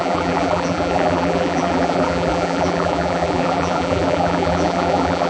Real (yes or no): no